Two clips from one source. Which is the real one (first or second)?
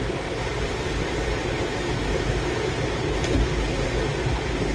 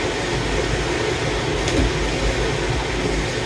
second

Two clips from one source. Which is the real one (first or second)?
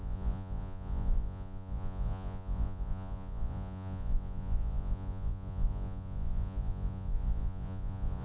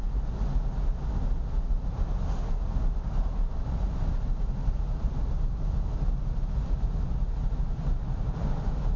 second